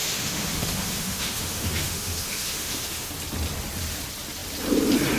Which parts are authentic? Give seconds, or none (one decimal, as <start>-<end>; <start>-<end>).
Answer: 3.1-5.2